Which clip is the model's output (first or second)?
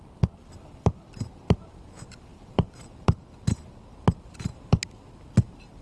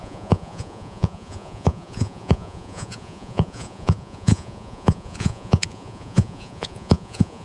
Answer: second